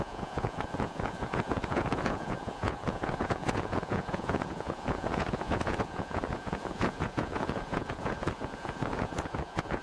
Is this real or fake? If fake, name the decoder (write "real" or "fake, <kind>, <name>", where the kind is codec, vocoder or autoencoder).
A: fake, vocoder, Vocos